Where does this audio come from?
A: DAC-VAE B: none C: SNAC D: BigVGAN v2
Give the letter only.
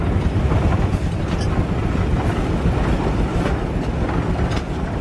B